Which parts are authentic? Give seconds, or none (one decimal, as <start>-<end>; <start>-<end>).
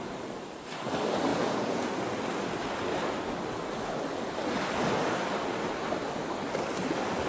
0.0-1.3; 1.9-7.3